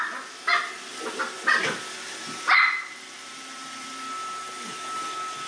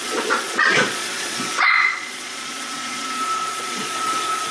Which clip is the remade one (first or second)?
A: second